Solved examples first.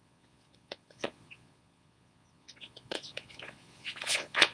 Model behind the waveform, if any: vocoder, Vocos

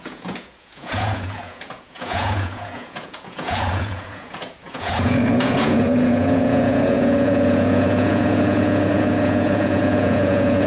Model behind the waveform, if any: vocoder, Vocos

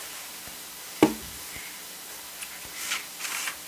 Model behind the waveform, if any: none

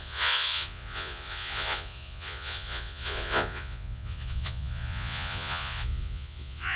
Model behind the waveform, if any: vocoder, Vocos